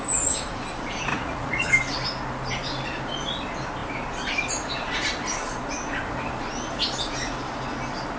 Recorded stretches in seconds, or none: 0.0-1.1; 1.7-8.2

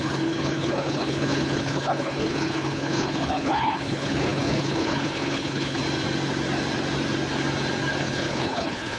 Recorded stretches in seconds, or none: 5.8-8.0

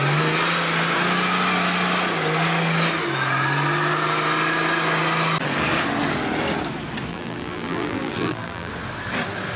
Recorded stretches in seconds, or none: 0.0-7.1; 8.7-9.6

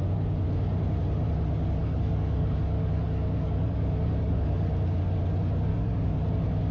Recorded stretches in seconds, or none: 0.0-1.8; 4.7-5.7; 6.3-6.7

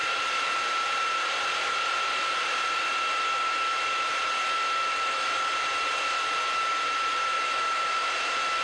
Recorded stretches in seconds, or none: 0.0-8.6

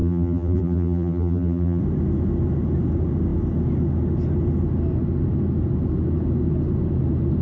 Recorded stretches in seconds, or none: 1.8-7.4